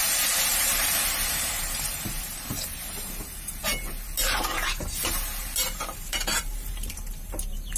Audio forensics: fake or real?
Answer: fake